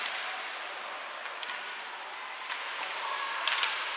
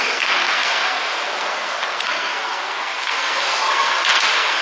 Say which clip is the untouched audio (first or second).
first